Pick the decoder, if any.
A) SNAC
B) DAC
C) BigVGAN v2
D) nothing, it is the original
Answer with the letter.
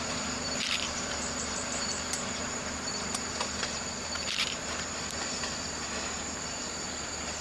C